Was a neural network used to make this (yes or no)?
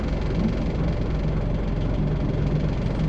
no